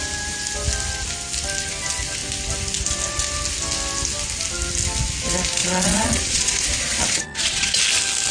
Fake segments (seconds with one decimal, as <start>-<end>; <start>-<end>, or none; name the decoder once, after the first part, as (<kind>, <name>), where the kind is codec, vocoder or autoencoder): 5.6-7.8 (vocoder, Vocos)